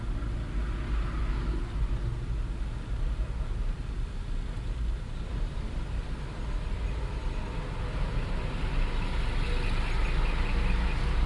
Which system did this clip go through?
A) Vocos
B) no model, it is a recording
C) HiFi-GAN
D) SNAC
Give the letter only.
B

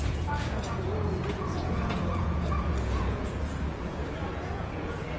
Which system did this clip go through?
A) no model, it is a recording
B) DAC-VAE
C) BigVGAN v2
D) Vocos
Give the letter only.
D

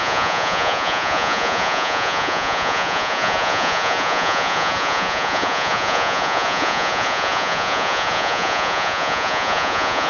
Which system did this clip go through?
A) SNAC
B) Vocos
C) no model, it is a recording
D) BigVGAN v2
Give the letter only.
B